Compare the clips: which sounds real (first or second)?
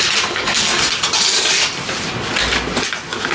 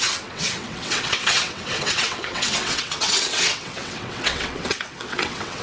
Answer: first